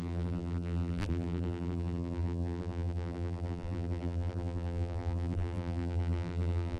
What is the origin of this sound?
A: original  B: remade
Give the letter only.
B